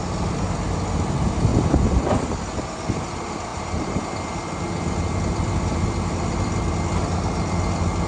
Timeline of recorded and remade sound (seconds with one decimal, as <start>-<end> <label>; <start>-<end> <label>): 0.0-1.5 recorded; 1.5-2.3 remade; 2.3-3.5 recorded; 3.5-4.0 remade; 4.0-8.1 recorded